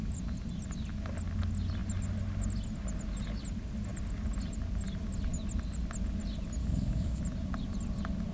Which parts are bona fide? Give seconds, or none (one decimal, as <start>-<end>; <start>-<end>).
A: 0.0-6.6; 7.2-8.3